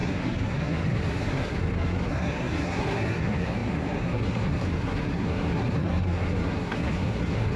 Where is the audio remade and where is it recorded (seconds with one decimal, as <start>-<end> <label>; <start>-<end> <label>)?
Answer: 0.0-7.6 remade